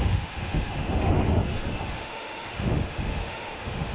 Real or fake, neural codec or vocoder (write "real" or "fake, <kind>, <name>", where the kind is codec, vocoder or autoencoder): fake, autoencoder, DAC-VAE